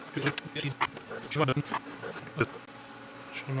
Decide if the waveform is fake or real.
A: real